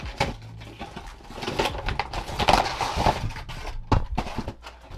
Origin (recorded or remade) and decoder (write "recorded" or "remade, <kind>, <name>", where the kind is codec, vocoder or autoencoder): recorded